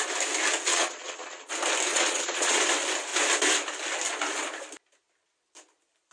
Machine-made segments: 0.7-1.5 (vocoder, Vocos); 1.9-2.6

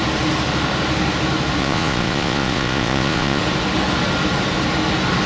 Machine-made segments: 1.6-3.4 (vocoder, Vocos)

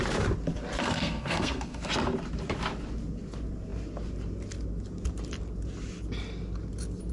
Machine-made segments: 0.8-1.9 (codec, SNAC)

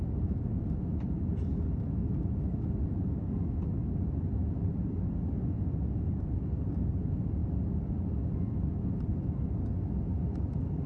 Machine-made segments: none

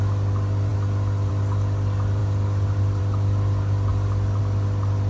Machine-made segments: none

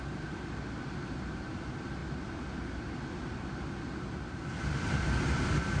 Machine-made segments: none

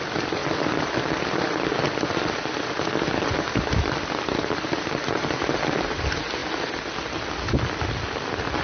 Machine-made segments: none

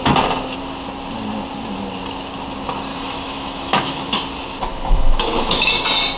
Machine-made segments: 2.9-4.1 (autoencoder, DAC-VAE); 4.7-5.7